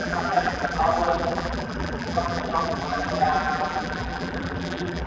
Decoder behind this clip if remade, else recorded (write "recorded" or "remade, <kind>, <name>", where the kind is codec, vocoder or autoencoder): remade, vocoder, BigVGAN v2